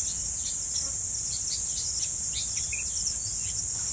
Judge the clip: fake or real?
real